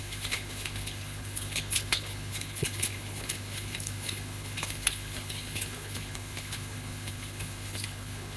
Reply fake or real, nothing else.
fake